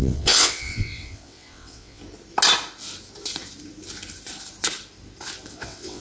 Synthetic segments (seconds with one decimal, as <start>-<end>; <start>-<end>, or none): 0.0-2.0; 5.5-6.0